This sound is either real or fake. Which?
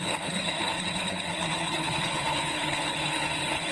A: fake